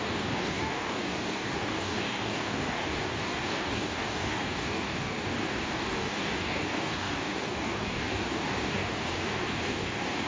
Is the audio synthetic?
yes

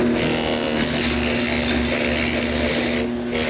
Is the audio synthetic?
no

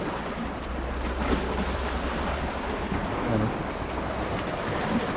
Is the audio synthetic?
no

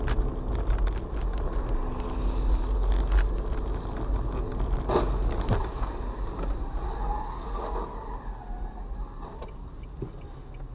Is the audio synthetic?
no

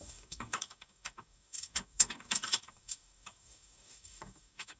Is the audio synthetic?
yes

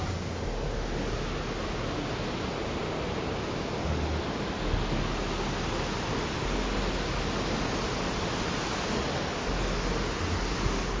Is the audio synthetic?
no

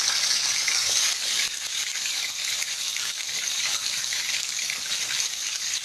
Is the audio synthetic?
yes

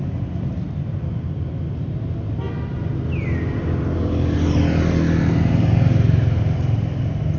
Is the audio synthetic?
no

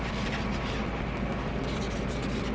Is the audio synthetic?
no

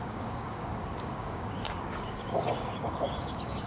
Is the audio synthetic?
yes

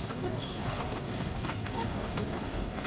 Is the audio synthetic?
yes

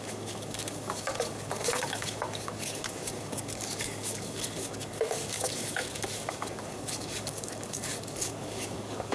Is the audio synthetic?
yes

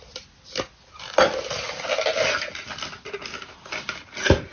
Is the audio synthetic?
no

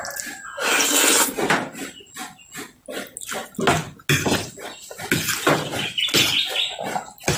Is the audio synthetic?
no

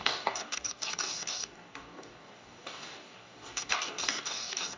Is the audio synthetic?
yes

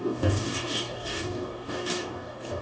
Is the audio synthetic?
yes